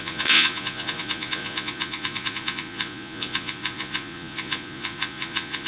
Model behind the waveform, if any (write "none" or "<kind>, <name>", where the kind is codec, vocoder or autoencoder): vocoder, Vocos